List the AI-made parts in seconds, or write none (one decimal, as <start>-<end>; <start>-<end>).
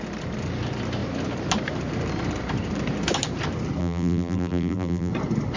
3.8-5.1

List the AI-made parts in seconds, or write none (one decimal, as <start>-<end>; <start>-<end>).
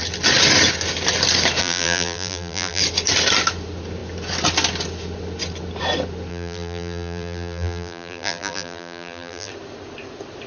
1.6-2.8; 6.3-9.5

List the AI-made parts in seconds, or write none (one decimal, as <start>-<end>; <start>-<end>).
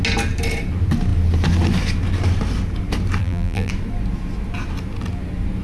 3.2-3.7